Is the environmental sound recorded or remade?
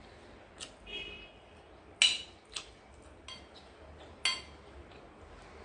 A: recorded